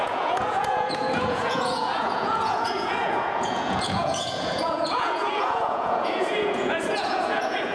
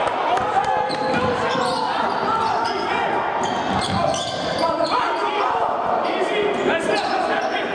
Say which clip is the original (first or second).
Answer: second